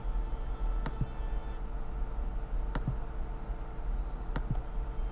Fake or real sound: real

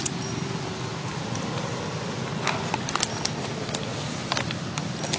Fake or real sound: real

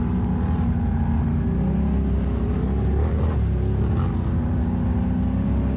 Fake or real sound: real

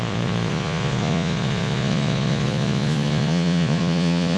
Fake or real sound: fake